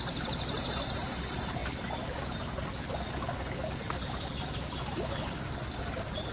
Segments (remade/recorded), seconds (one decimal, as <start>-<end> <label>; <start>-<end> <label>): 0.0-6.3 recorded